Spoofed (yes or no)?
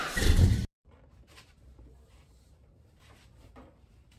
yes